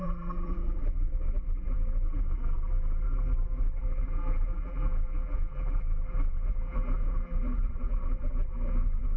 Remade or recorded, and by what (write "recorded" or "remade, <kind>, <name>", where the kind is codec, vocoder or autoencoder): remade, vocoder, BigVGAN v2